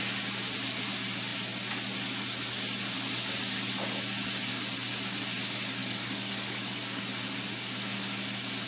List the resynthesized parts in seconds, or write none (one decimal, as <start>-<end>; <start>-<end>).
5.8-7.0